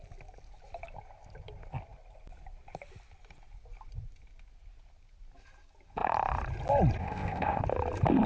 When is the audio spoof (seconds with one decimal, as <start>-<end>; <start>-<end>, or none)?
7.0-7.6